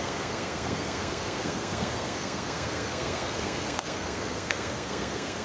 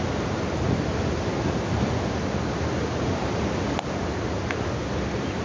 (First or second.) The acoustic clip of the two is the second